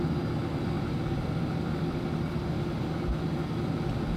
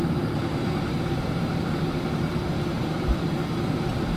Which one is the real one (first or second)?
first